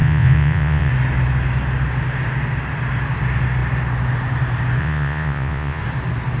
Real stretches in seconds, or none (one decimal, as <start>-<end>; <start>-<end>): 0.9-4.8; 5.8-6.4